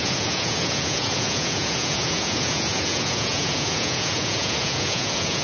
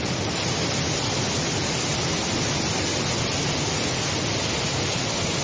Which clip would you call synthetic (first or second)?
first